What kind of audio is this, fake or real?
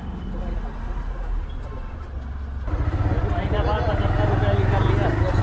real